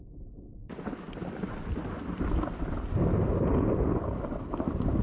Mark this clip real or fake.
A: real